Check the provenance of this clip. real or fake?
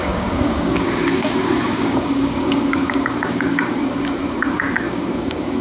fake